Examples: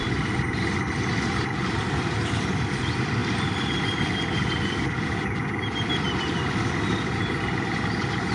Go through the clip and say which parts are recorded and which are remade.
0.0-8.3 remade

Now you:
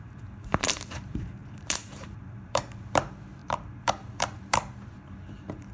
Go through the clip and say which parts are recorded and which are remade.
0.0-5.7 remade

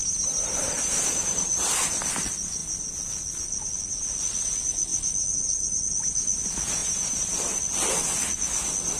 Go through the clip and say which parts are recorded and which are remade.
0.0-2.0 remade; 2.0-6.8 recorded; 6.8-7.6 remade; 7.6-9.0 recorded